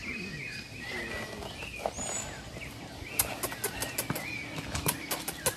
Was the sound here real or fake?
real